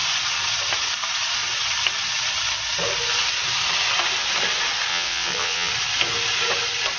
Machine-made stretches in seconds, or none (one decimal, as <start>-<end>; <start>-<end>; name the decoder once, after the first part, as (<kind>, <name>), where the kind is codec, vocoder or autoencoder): 4.9-5.7 (vocoder, WaveNeXt)